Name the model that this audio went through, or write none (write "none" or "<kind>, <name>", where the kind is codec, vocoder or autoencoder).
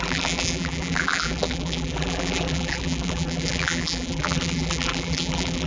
vocoder, BigVGAN v2